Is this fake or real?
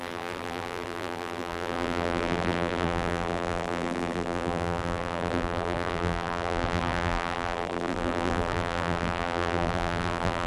fake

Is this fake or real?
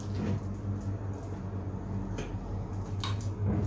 real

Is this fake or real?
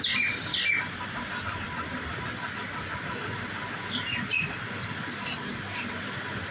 real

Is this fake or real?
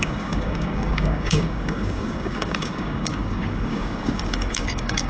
fake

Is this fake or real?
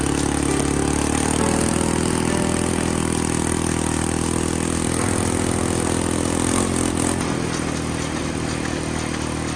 real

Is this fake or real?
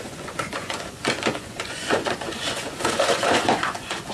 fake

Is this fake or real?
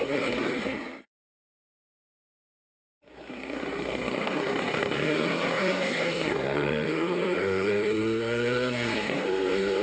fake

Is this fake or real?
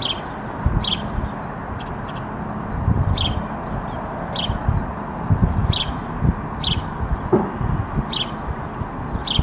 real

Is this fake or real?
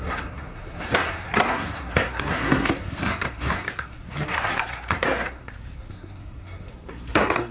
fake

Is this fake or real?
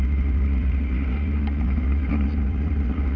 fake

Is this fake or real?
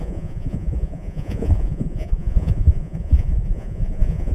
fake